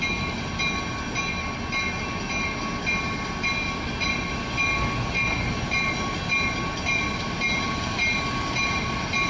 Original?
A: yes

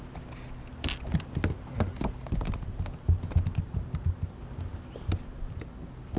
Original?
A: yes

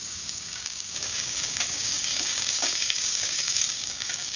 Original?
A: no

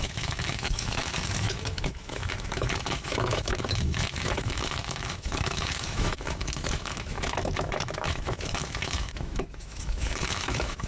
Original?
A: no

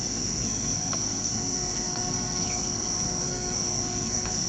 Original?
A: no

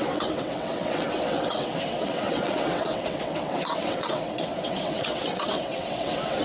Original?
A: no